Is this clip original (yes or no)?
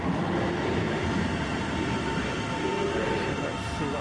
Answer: yes